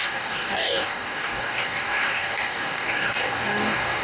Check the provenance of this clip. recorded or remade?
remade